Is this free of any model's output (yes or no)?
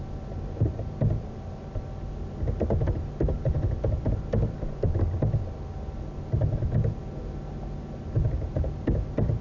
yes